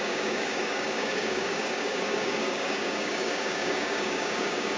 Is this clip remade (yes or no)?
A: yes